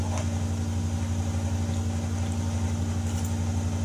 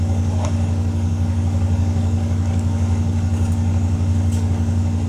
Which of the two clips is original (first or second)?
first